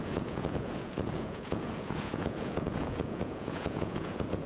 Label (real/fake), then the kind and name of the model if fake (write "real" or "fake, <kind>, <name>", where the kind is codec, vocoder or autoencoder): fake, vocoder, Vocos